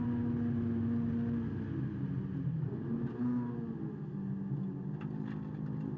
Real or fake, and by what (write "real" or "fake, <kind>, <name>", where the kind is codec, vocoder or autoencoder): real